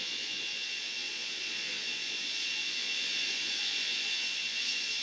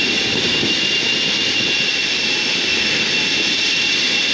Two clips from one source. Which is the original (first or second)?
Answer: second